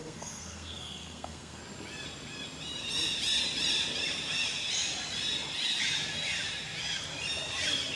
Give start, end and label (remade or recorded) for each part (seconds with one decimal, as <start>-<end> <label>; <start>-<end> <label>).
0.0-1.6 remade; 1.6-8.0 recorded